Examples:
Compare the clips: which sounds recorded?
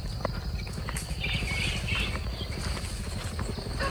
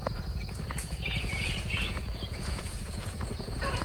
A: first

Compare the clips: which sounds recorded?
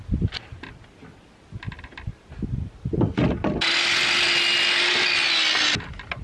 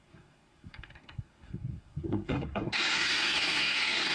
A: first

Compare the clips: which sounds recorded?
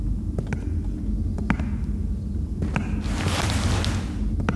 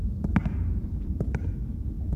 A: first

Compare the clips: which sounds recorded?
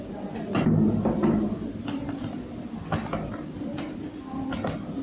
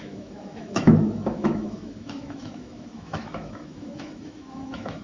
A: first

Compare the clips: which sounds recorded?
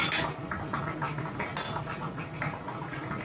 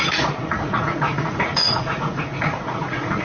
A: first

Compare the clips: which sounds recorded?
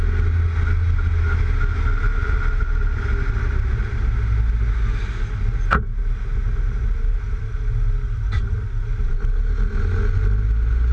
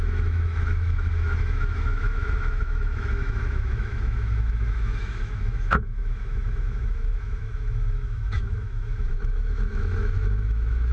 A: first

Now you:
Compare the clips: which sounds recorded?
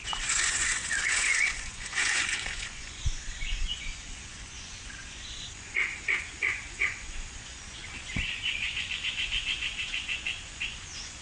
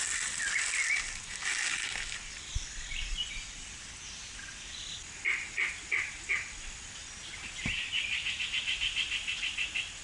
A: second